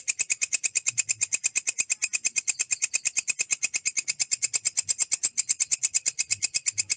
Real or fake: real